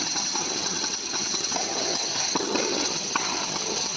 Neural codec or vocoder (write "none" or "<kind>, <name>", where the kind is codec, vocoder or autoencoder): vocoder, HiFi-GAN